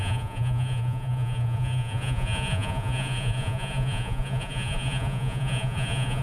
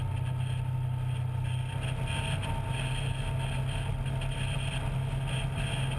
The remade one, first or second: first